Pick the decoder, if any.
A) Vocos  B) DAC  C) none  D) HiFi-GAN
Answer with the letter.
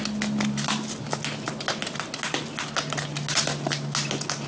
C